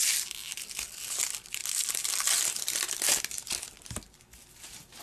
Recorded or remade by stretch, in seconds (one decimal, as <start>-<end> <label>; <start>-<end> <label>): 0.0-5.0 recorded